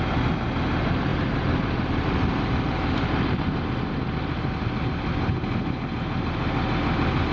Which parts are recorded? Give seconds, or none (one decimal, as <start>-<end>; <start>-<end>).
0.0-1.1; 3.4-7.3